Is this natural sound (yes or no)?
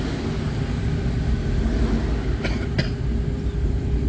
yes